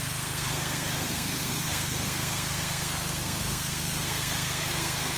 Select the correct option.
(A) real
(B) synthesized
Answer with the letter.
B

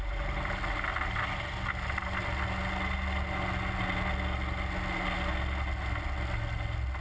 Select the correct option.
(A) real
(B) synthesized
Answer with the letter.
A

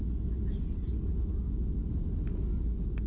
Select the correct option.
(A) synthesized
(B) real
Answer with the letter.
B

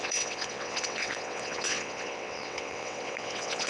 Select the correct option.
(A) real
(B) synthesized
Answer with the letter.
B